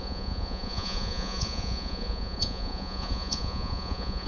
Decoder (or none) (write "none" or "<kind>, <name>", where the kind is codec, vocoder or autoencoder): vocoder, Vocos